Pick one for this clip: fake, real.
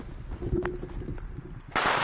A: real